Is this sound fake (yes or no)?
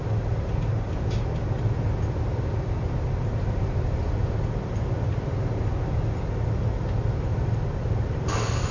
no